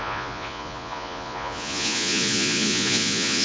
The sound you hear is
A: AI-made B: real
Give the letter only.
A